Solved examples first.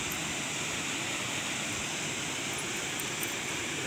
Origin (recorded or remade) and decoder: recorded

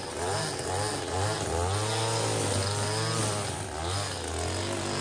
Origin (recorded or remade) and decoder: recorded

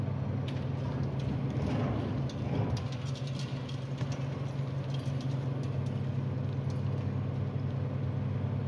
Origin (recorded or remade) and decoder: recorded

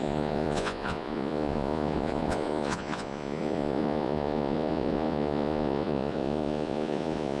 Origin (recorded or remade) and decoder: remade, vocoder, Vocos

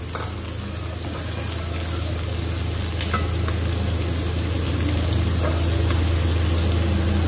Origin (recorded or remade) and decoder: recorded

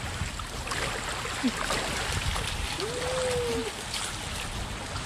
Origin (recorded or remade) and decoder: recorded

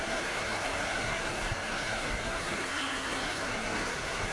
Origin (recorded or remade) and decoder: remade, codec, SNAC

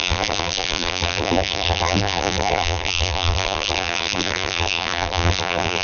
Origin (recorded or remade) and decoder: remade, vocoder, BigVGAN v2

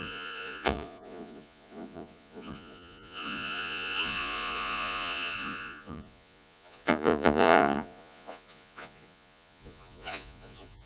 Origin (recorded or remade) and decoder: remade, vocoder, Vocos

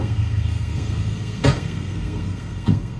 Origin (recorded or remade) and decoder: remade, codec, SNAC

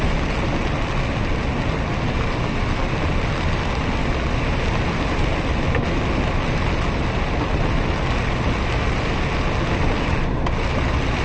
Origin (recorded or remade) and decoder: recorded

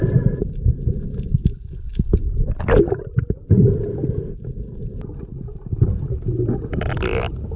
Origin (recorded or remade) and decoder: recorded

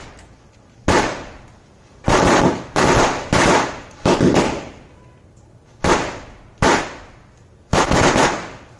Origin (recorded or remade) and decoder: recorded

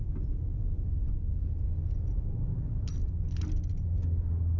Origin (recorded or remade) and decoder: recorded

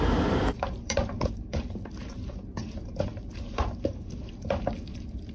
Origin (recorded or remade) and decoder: remade, vocoder, BigVGAN v2